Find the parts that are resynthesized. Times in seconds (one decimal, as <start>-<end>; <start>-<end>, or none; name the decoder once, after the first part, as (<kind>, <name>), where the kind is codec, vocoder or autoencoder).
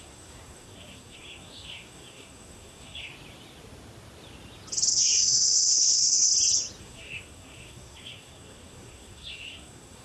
0.0-3.1 (codec, SNAC); 4.9-6.3; 6.8-10.0